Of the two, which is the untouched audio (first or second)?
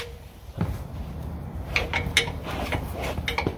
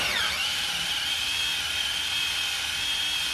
second